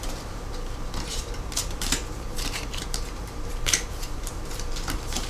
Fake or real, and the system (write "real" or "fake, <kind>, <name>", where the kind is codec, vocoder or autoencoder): fake, vocoder, BigVGAN v2